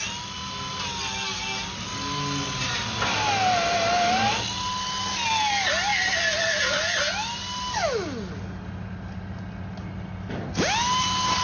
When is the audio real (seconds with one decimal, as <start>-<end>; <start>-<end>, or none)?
0.0-11.4

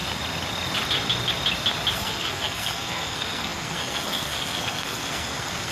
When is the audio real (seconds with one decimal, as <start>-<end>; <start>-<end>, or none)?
0.0-1.9

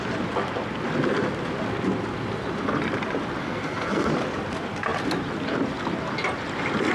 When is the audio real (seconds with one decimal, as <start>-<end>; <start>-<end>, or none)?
0.0-3.4; 4.1-6.9

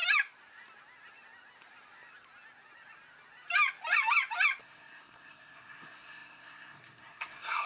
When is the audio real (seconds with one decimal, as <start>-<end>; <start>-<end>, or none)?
0.0-4.6